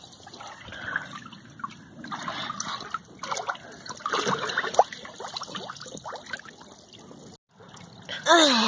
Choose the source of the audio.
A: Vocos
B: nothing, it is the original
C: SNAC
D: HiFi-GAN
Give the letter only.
B